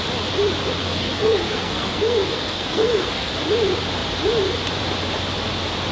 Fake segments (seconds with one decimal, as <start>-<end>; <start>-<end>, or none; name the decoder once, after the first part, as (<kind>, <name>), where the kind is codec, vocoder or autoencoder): 0.8-3.3 (codec, SNAC)